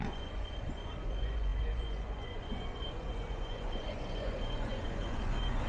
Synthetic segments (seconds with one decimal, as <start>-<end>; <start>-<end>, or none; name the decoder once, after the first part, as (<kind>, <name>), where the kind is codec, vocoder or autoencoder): 0.0-5.7 (vocoder, Vocos)